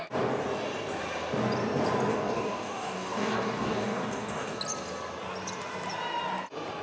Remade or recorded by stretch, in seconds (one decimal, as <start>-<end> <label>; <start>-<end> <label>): 0.0-2.1 recorded; 2.1-4.6 remade; 4.6-6.8 recorded